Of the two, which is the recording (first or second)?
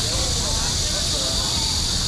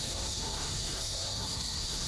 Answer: first